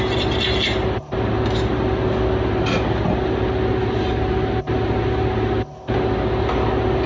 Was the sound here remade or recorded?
recorded